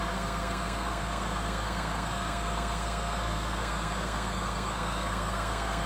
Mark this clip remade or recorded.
remade